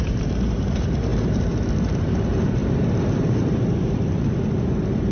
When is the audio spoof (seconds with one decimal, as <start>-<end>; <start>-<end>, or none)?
0.0-5.1